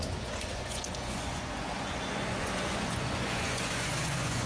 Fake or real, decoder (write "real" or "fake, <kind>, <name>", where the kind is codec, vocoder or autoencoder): fake, vocoder, Vocos